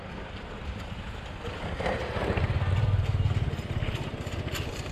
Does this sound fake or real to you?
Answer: fake